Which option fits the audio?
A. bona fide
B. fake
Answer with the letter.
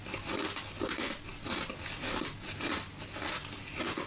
A